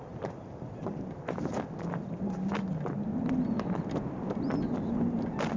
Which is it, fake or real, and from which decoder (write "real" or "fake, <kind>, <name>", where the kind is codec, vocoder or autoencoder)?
real